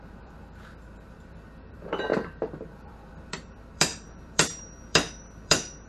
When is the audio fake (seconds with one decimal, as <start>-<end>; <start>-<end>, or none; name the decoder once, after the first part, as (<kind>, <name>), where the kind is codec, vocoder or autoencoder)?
0.0-5.9 (vocoder, BigVGAN v2)

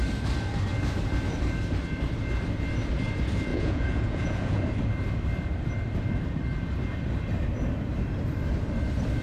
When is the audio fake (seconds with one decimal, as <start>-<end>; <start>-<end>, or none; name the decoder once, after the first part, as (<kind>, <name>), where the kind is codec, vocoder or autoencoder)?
3.5-4.6 (vocoder, Vocos)

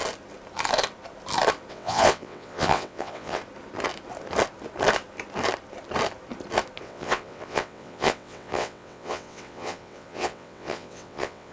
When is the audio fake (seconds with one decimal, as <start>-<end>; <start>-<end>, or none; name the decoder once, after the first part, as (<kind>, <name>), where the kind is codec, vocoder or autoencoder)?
1.7-3.4 (vocoder, WaveNeXt); 6.8-11.5

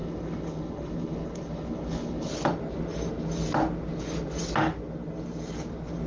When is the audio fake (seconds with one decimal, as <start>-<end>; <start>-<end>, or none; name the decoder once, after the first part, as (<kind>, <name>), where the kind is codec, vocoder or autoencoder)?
0.0-2.3 (codec, HILCodec)

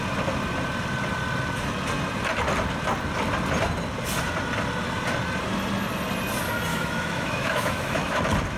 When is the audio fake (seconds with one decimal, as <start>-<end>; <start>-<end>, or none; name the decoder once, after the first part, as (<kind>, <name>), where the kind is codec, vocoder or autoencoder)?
6.7-8.2 (autoencoder, DAC-VAE)

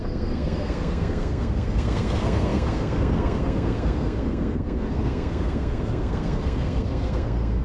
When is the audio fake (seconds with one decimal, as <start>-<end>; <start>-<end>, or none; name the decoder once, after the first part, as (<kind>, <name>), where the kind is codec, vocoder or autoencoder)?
0.0-7.6 (codec, SNAC)

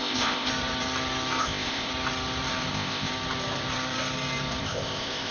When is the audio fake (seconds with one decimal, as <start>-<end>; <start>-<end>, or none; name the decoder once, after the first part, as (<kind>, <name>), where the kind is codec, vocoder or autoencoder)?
0.0-0.5 (codec, ZipCodec); 1.4-1.9; 2.7-3.1; 4.6-5.3

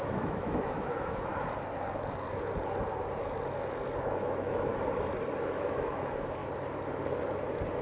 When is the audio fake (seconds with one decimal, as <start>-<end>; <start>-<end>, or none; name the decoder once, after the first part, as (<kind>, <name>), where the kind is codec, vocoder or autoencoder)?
0.0-1.3 (autoencoder, DAC-VAE); 4.1-4.7; 5.4-6.4